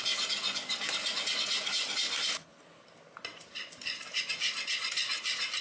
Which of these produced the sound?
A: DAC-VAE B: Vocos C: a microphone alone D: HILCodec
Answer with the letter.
C